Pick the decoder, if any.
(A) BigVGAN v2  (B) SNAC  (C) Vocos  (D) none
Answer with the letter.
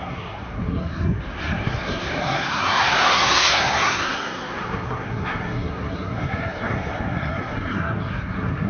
B